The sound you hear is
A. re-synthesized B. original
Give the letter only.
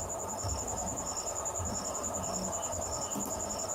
B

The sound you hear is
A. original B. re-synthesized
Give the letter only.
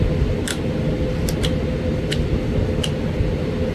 A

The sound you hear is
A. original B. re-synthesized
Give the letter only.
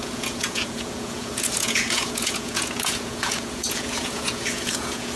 B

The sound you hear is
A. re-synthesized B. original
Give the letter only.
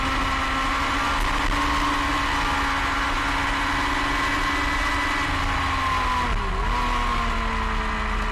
B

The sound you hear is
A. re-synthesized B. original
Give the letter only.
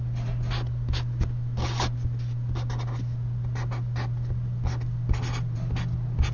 B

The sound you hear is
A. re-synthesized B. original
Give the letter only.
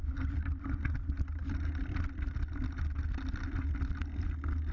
B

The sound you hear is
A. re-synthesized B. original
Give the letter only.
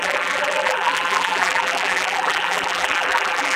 A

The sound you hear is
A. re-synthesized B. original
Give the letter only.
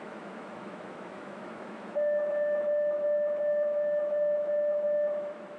A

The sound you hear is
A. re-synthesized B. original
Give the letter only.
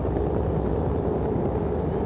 B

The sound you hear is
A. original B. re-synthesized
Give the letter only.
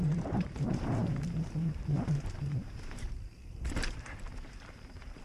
B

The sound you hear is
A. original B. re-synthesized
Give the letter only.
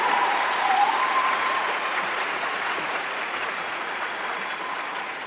B